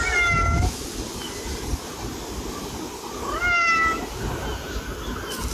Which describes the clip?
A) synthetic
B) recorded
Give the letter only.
B